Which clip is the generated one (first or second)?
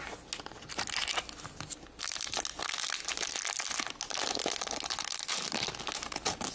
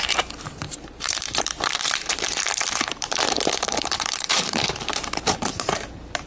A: second